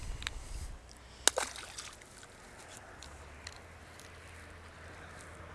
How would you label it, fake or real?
real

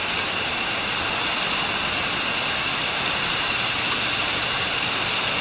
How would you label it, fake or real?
real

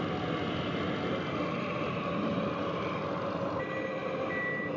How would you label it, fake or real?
real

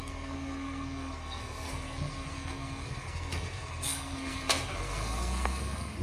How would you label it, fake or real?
fake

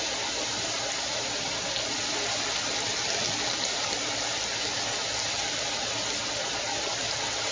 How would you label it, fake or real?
real